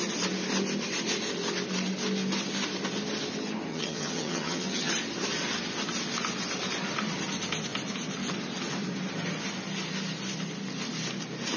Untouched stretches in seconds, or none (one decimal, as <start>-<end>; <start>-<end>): 0.0-3.7; 4.9-11.6